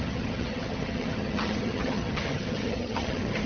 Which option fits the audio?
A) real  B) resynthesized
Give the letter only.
B